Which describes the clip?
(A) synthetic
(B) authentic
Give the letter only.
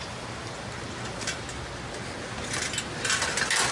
B